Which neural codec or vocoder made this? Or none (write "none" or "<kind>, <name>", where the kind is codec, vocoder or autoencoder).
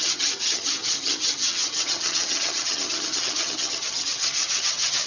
vocoder, HiFi-GAN